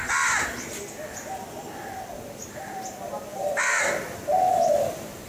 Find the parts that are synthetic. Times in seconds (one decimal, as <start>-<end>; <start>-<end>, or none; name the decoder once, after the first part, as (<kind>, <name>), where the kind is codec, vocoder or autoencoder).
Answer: 3.3-3.8 (vocoder, BigVGAN v2)